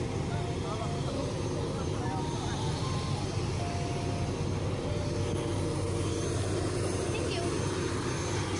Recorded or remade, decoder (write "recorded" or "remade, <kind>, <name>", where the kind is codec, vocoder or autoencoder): recorded